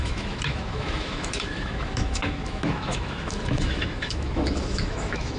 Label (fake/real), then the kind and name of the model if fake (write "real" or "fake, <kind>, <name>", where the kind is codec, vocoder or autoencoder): fake, autoencoder, DAC-VAE